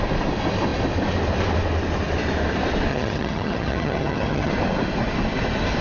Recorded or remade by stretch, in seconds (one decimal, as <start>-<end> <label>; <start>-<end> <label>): 0.0-2.9 recorded; 2.9-4.5 remade; 4.5-5.8 recorded